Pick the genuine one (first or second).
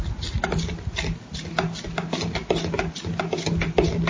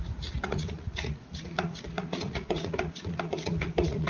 first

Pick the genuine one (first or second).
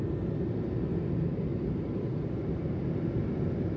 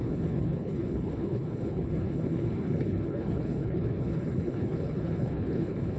first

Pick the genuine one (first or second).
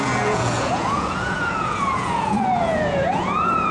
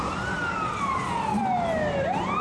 second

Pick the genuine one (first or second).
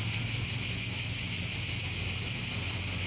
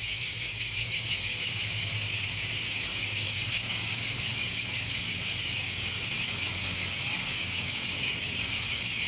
first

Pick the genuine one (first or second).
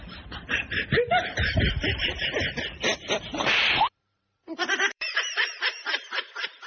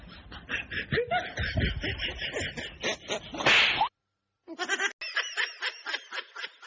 second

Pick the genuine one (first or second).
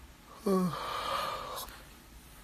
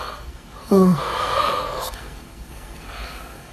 first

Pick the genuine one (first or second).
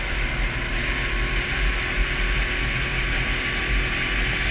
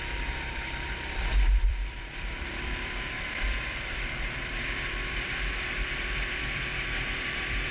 first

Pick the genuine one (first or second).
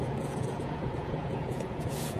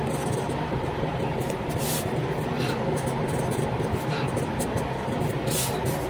second